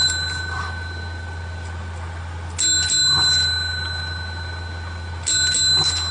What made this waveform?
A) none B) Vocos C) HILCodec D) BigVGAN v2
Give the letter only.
A